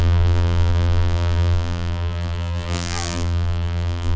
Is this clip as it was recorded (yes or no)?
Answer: no